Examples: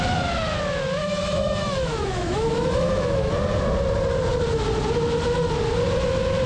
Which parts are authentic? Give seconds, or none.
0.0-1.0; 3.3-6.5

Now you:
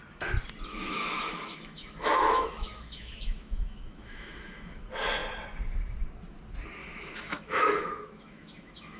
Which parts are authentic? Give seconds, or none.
0.0-0.7; 4.8-6.8

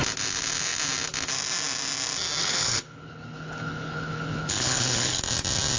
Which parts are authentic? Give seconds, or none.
0.0-2.4; 5.2-5.8

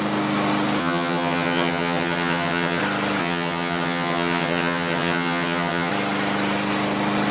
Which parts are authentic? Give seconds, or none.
0.0-0.8; 2.8-3.2; 5.9-7.3

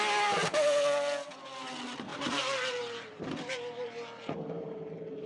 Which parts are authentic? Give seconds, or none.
0.0-2.1

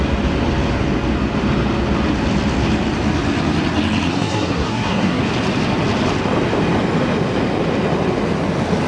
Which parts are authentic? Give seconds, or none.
0.0-4.1; 5.2-8.9

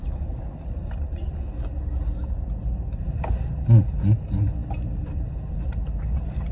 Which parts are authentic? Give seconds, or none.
0.0-6.5

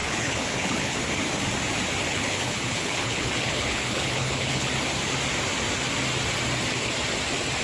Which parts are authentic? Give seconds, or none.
1.0-2.1; 4.7-7.6